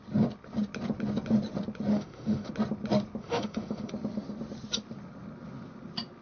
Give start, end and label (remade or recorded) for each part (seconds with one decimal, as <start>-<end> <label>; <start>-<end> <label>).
0.0-1.9 recorded; 1.9-2.5 remade; 2.5-3.2 recorded; 3.2-3.9 remade; 3.9-6.2 recorded